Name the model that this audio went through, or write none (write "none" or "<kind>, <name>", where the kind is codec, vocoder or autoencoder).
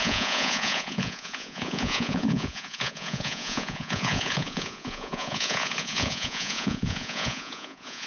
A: vocoder, Vocos